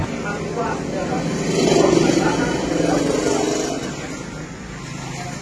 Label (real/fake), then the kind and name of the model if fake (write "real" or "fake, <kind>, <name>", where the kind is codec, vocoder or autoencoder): real